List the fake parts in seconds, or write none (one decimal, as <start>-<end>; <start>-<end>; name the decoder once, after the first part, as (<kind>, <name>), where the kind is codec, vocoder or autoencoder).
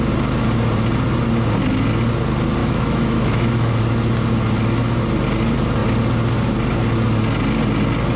2.6-3.8 (autoencoder, DAC-VAE)